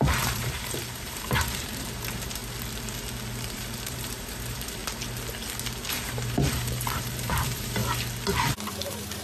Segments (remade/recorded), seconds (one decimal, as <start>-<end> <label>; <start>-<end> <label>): 0.0-2.4 remade; 2.4-3.5 recorded; 3.5-4.8 remade; 4.8-5.9 recorded; 5.9-7.8 remade; 7.8-8.7 recorded; 8.7-9.2 remade

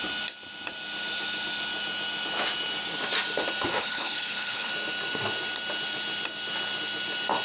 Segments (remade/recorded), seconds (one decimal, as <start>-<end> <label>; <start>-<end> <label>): 0.0-3.7 recorded; 3.7-4.7 remade; 4.7-7.4 recorded

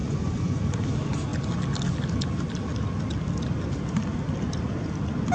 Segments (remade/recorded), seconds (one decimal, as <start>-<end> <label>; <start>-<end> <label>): 0.0-0.6 remade; 0.6-5.3 recorded